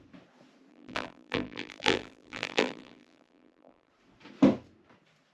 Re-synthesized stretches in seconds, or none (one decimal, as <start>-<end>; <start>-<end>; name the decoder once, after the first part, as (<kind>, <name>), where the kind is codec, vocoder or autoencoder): 0.7-3.9 (vocoder, BigVGAN v2)